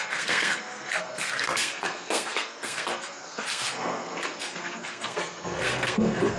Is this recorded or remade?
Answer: remade